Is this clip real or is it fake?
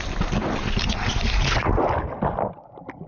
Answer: real